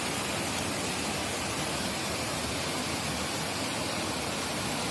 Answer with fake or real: real